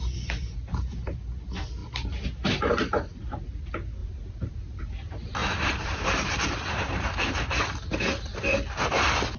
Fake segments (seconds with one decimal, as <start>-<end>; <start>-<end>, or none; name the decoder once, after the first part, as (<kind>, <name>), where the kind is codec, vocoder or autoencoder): 4.0-4.8 (vocoder, BigVGAN v2); 5.4-7.6